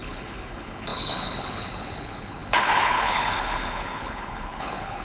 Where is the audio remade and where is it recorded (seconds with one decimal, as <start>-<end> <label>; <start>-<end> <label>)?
0.0-5.0 remade